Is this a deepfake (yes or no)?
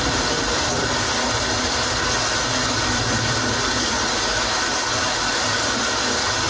no